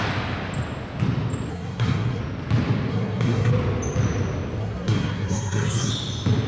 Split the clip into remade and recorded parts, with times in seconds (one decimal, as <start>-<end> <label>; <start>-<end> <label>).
0.0-1.5 recorded; 1.5-2.2 remade; 2.2-2.9 recorded; 2.9-3.5 remade; 3.5-4.6 recorded; 4.6-5.9 remade; 5.9-6.5 recorded